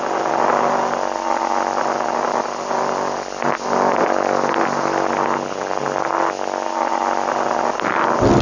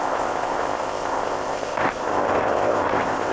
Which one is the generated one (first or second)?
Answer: second